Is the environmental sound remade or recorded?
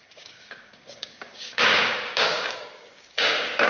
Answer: remade